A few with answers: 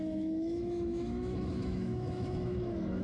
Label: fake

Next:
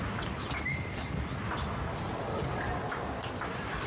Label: real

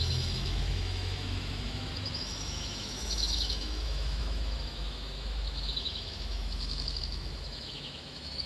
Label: fake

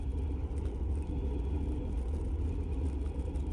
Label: real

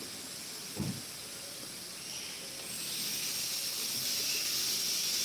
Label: real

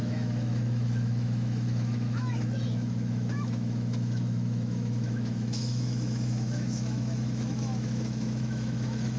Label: fake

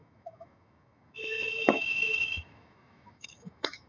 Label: fake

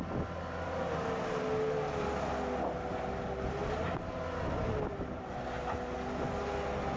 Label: real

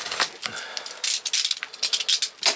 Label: real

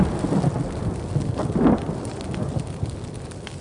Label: real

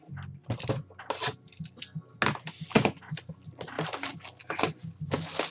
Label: real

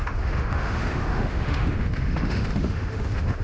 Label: fake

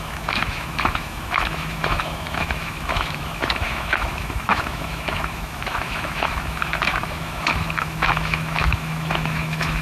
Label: fake